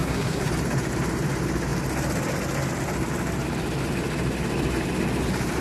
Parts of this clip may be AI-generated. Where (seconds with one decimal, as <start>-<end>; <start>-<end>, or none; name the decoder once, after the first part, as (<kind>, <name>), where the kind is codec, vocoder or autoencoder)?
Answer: 0.0-0.5 (codec, SNAC)